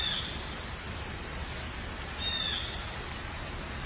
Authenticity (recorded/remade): recorded